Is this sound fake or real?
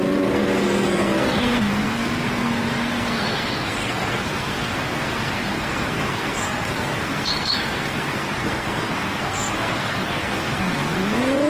fake